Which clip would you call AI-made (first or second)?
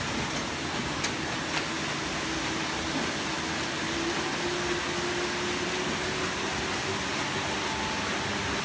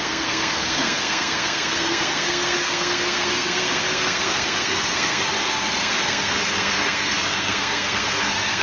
second